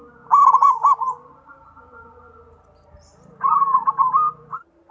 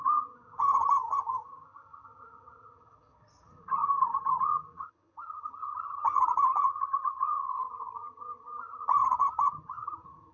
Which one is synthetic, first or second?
second